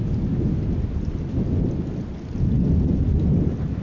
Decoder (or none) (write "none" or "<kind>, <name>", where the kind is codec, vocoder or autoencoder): none